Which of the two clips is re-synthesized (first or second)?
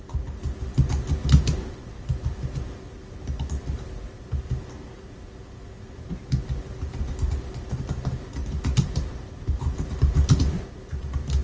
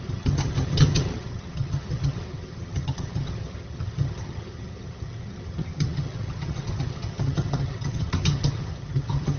second